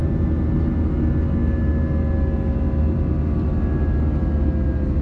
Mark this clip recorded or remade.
recorded